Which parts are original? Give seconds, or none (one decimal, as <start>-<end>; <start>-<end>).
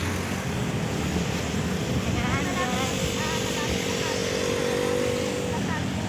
0.0-6.1